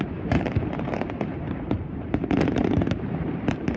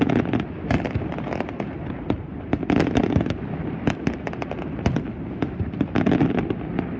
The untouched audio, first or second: second